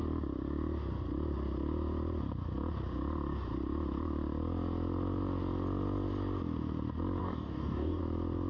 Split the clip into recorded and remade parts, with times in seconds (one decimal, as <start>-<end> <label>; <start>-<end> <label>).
0.0-7.2 recorded; 7.2-8.0 remade; 8.0-8.5 recorded